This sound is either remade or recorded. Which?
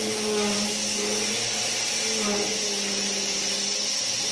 recorded